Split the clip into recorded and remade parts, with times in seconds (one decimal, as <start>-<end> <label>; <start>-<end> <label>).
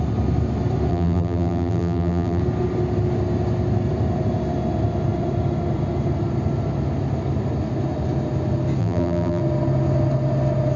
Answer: 0.0-0.9 recorded; 0.9-2.4 remade; 2.4-8.8 recorded; 8.8-9.4 remade; 9.4-10.8 recorded